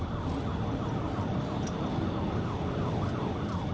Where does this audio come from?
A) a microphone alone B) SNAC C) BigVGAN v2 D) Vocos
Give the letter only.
A